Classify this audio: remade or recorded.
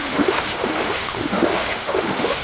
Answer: remade